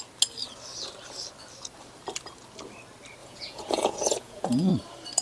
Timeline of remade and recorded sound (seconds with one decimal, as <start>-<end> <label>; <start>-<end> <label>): 0.0-3.2 recorded; 3.2-4.7 remade; 4.7-5.2 recorded